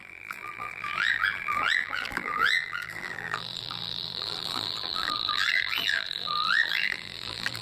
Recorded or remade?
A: remade